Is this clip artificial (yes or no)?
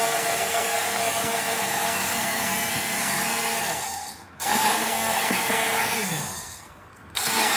yes